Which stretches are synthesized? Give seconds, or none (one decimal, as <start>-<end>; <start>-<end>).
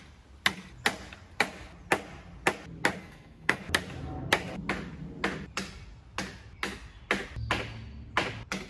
3.0-3.6